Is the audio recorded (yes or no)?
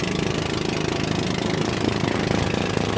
yes